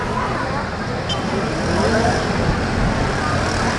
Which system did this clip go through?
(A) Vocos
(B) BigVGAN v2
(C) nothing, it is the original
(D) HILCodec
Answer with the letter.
C